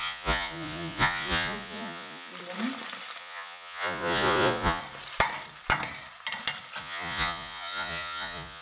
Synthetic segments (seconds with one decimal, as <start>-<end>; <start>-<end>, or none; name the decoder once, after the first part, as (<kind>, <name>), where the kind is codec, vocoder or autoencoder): 0.0-2.3 (vocoder, Vocos); 3.2-4.8; 6.8-8.6